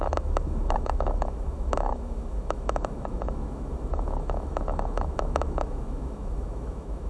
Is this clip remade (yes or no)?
yes